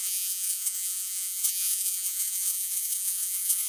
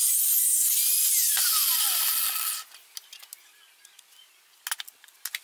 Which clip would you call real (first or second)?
second